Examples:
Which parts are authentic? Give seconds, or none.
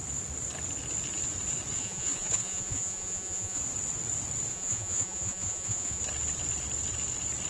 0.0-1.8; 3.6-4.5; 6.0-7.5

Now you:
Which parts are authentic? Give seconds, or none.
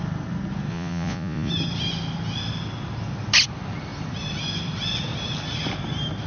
0.0-0.7; 1.5-6.3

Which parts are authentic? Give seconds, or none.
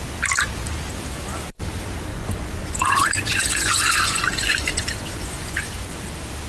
0.0-2.1; 6.0-6.5